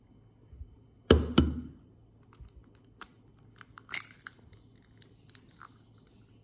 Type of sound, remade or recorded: recorded